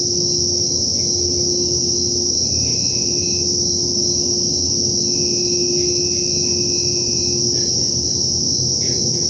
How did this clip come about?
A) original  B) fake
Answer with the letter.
A